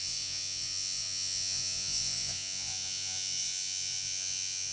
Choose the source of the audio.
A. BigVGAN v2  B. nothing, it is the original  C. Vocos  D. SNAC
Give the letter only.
C